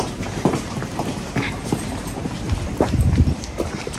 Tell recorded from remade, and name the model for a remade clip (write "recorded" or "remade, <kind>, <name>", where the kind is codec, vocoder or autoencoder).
remade, vocoder, BigVGAN v2